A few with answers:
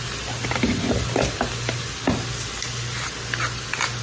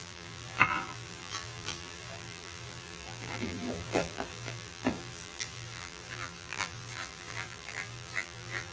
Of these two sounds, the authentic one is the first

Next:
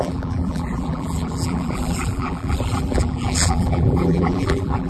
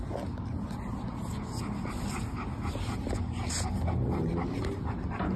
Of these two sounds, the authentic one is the second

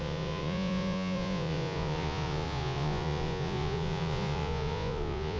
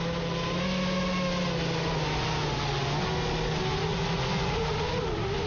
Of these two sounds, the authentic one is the second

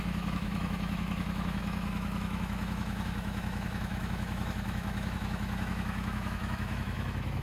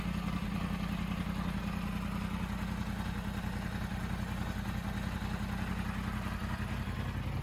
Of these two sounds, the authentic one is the second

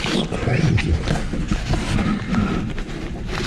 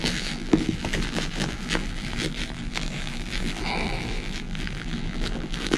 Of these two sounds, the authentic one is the first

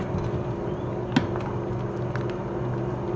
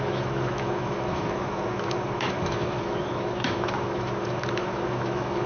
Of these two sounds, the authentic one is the first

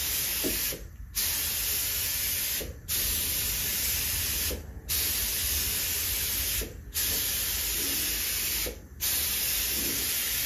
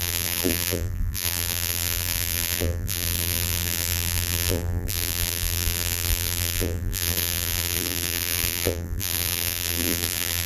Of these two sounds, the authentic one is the first